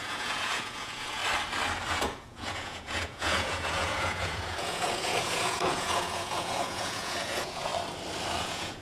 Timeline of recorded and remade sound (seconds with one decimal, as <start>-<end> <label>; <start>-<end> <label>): 0.0-1.2 remade; 1.2-1.9 recorded; 1.9-7.7 remade; 7.7-8.4 recorded; 8.4-8.8 remade